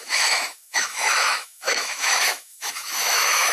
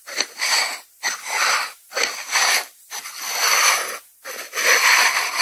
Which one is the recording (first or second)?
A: second